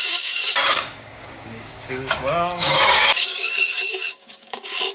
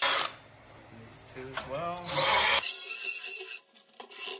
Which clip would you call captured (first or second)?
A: second